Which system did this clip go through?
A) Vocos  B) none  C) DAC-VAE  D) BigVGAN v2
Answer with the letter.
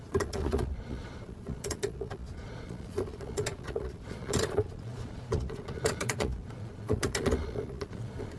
A